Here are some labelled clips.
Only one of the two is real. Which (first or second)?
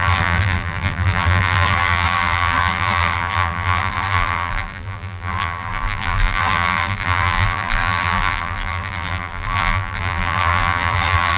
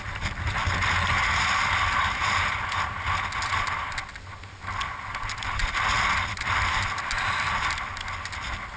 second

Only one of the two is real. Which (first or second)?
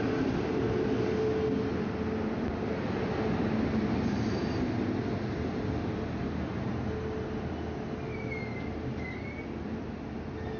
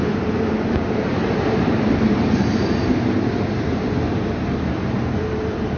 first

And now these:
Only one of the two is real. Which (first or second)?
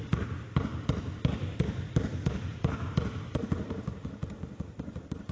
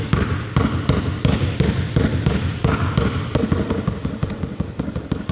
second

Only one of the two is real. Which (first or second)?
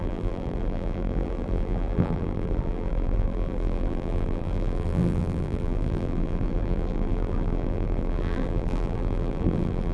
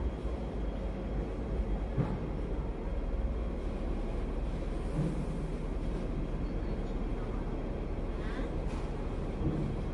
second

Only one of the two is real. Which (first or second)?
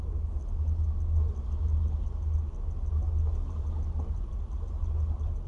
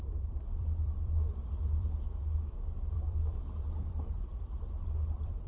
first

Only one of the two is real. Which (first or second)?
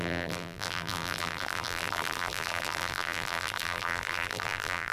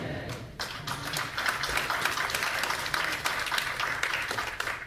second